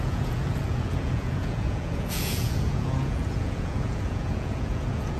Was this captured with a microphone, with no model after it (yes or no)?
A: no